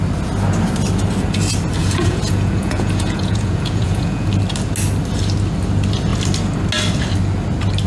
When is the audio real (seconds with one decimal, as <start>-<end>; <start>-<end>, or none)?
0.0-1.8; 4.3-7.9